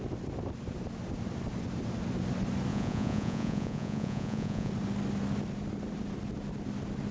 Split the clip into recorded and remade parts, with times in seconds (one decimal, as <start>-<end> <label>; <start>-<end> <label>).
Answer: 0.0-2.7 recorded; 2.7-4.7 remade; 4.7-7.1 recorded